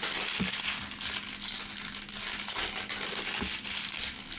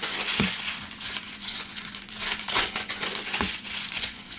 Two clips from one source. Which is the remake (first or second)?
second